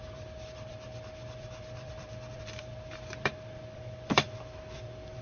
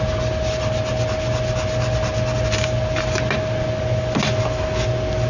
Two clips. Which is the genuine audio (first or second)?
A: second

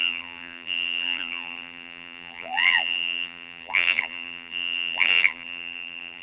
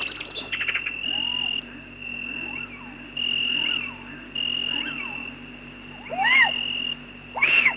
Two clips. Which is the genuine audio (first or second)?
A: second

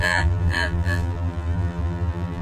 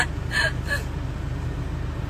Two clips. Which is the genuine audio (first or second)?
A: second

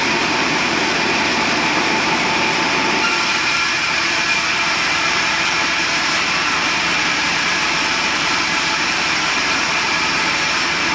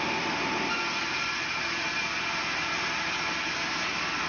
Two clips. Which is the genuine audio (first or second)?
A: second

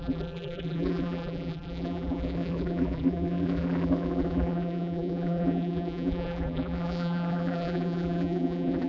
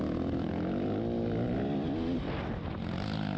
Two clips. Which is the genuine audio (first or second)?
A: second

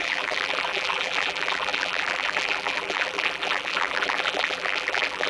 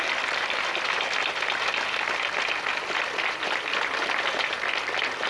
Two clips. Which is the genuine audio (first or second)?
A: second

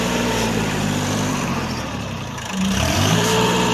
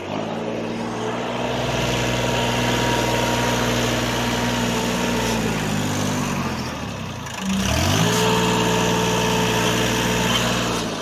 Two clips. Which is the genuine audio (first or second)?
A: second